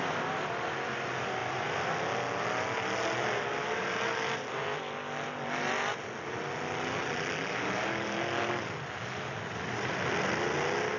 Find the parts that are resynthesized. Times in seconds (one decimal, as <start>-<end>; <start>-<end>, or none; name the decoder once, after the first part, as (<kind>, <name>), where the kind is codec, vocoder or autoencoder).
none